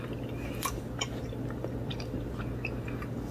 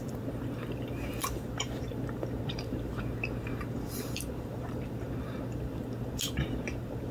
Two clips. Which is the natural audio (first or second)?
first